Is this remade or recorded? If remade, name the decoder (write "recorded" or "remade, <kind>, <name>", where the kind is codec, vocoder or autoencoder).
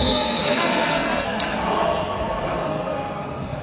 remade, codec, SNAC